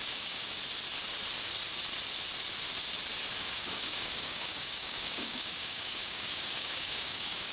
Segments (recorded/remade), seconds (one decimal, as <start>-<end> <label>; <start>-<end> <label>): 0.0-0.6 remade; 0.6-3.4 recorded; 3.4-7.5 remade